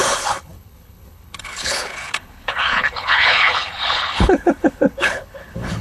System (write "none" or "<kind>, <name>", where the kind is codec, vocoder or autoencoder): codec, HILCodec